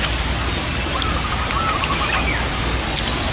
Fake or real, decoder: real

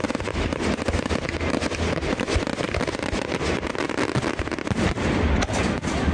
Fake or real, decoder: real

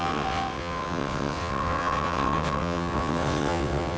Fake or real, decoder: fake, vocoder, WaveNeXt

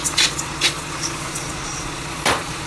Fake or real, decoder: fake, vocoder, Vocos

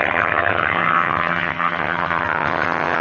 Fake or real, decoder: fake, vocoder, HiFi-GAN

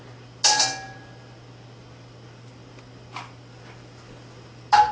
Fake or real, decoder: real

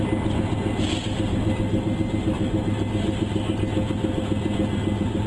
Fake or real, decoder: real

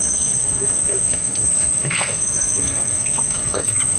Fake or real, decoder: fake, codec, SNAC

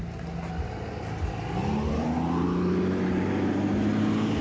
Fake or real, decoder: real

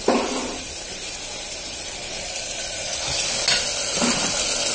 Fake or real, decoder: real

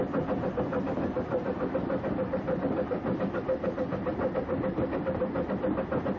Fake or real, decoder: real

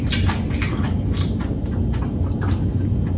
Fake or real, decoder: real